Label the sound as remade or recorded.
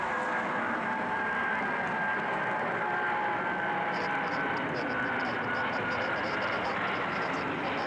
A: remade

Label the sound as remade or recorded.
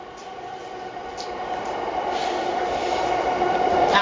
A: remade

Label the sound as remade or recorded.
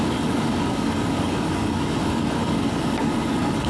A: remade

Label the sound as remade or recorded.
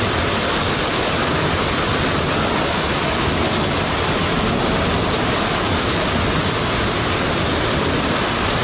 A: recorded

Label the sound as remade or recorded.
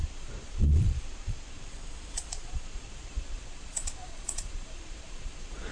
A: remade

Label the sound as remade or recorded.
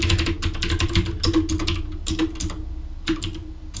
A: recorded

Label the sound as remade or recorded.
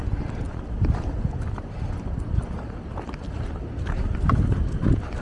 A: recorded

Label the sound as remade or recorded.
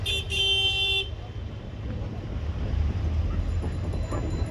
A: recorded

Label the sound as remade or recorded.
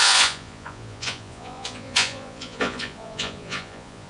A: remade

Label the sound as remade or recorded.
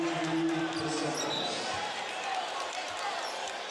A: recorded